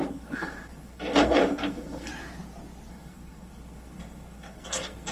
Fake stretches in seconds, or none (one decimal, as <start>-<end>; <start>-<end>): 0.0-2.1; 2.9-5.1